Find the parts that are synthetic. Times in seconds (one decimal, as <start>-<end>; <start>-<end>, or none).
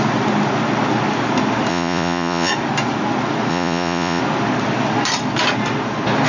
1.7-2.5; 3.5-4.2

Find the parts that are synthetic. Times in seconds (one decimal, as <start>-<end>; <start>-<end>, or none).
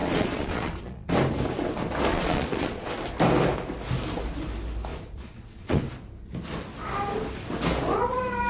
0.0-1.1; 2.1-2.9; 4.9-5.8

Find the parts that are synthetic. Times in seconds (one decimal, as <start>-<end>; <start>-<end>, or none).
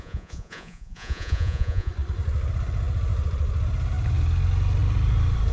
0.0-1.9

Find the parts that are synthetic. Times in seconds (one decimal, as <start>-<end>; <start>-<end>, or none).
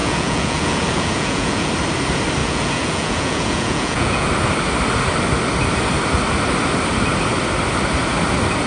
0.0-1.7; 2.4-4.3